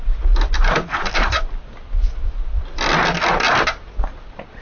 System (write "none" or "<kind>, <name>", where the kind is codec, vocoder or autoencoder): none